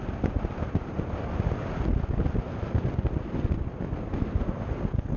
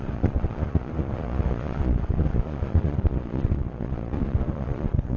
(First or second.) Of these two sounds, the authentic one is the first